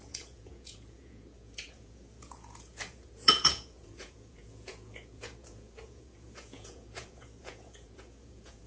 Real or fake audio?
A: fake